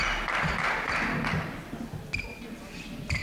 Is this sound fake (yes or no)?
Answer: no